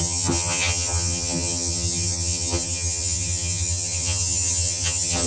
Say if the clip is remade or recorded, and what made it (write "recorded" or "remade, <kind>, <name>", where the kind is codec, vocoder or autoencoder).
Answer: remade, vocoder, HiFi-GAN